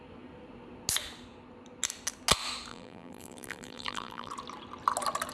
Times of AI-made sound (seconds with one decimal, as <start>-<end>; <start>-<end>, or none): 2.7-4.3